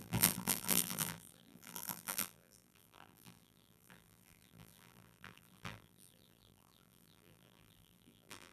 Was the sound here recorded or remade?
remade